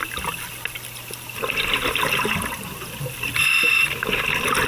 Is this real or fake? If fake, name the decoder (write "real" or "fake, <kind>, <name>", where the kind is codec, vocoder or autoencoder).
real